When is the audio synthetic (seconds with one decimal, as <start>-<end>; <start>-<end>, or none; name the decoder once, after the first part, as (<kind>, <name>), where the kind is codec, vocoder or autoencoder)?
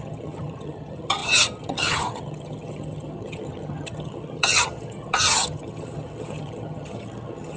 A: 0.0-7.6 (vocoder, HiFi-GAN)